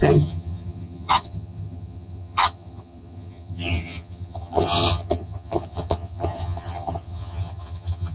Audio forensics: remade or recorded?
remade